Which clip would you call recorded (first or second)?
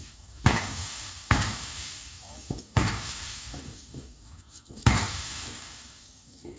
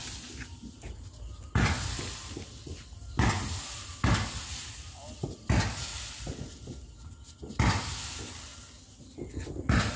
second